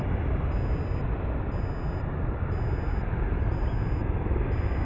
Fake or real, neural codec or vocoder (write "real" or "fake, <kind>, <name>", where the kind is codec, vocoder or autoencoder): real